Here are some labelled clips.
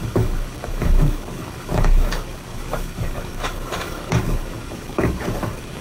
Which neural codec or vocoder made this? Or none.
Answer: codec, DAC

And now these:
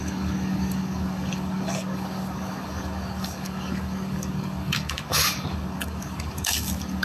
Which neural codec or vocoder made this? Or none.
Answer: codec, DAC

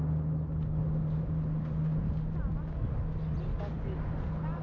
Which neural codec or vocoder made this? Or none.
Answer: none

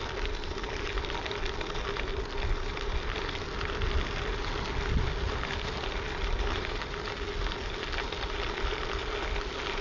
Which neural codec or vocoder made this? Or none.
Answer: none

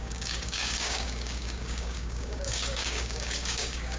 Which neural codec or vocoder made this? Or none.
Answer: codec, DAC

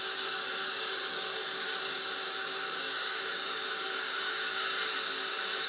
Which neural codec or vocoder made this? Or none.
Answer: codec, DAC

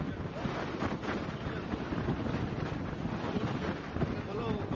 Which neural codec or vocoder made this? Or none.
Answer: none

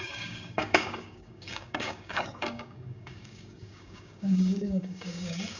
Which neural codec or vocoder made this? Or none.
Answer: codec, DAC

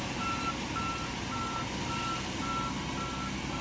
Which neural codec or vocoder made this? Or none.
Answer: none